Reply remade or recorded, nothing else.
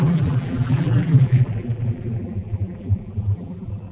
remade